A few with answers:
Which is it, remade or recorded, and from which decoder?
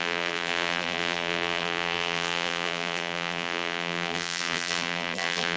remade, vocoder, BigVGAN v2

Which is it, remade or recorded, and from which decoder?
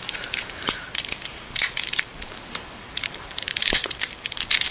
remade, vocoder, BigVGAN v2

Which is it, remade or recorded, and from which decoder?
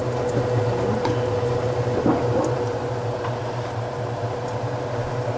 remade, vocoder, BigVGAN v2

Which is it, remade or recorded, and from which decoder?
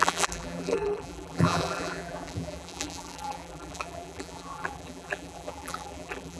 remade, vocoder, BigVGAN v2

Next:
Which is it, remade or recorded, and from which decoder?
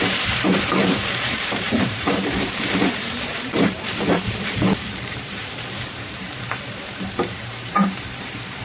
remade, vocoder, BigVGAN v2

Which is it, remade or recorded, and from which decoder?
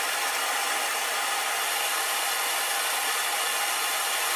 remade, vocoder, BigVGAN v2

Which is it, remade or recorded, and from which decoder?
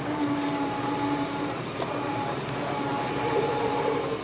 recorded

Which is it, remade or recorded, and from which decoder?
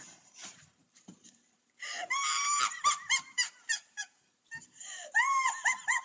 remade, vocoder, BigVGAN v2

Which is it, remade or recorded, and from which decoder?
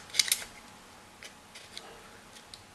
recorded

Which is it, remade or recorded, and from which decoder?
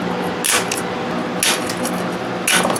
recorded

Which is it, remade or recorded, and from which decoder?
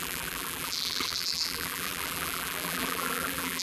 remade, vocoder, BigVGAN v2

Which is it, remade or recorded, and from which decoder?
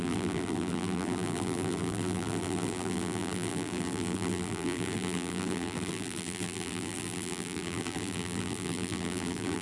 remade, vocoder, BigVGAN v2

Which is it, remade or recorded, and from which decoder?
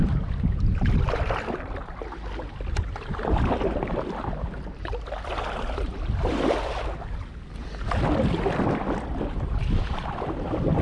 remade, vocoder, BigVGAN v2